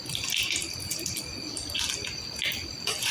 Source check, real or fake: real